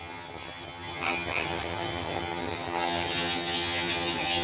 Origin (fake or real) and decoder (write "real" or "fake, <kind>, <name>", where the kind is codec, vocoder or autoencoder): fake, vocoder, HiFi-GAN